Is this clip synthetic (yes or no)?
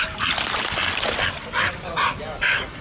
no